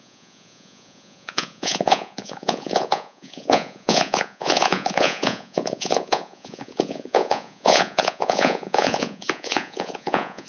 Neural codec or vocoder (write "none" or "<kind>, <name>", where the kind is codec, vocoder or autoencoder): vocoder, Vocos